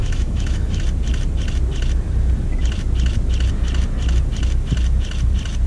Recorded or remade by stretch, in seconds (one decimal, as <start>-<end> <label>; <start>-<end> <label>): 0.0-0.8 remade; 0.8-5.7 recorded